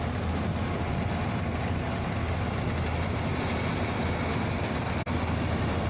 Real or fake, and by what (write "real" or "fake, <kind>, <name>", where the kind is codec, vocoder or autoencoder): real